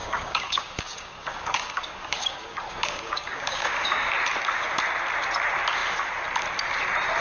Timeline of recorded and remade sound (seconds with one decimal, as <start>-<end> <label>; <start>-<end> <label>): 0.0-4.1 remade; 4.1-7.2 recorded